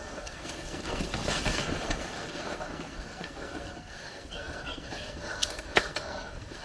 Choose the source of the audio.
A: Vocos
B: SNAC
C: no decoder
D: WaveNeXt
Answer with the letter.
B